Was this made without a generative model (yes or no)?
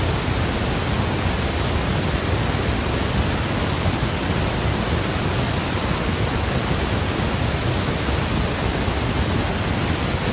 yes